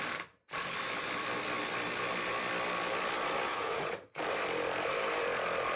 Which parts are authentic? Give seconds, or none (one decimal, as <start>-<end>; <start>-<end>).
0.0-3.5; 4.2-5.8